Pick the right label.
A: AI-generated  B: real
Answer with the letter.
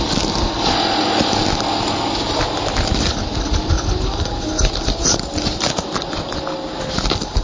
B